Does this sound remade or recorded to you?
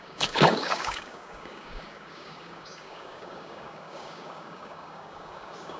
remade